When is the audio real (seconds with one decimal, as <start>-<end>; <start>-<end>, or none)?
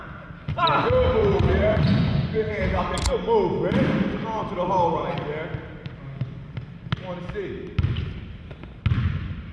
0.0-1.2; 2.8-9.5